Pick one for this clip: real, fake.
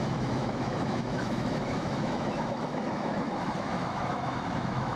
fake